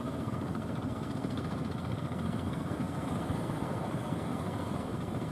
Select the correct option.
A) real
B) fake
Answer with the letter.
B